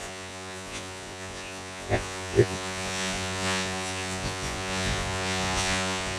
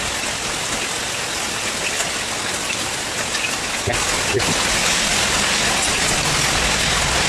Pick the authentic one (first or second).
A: second